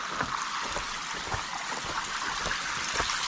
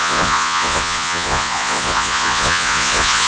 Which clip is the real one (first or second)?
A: first